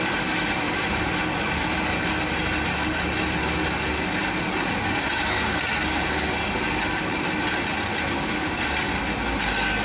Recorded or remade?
recorded